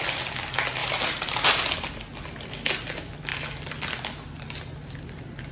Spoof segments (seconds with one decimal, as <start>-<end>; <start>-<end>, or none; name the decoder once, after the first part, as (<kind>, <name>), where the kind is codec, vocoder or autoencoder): 0.8-1.6 (vocoder, BigVGAN v2)